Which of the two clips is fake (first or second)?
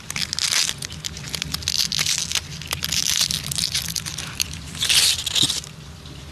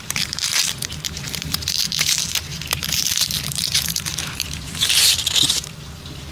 second